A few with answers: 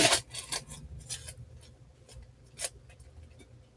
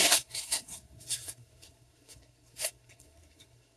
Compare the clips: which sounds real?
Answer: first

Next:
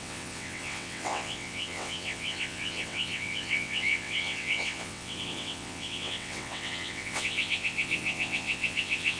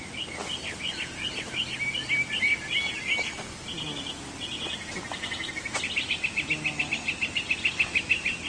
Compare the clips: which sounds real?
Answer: second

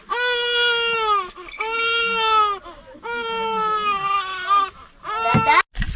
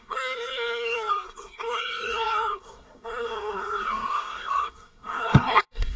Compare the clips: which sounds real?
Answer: first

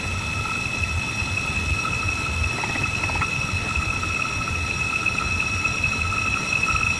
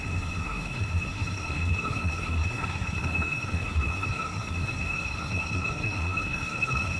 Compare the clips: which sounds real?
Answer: first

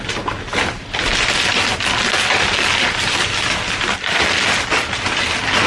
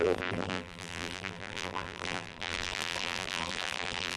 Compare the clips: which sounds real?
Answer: first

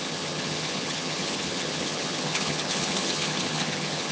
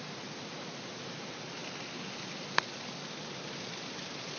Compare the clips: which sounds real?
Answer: second